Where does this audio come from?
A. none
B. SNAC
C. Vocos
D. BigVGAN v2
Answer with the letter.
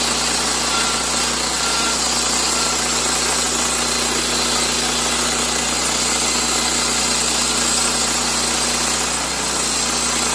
A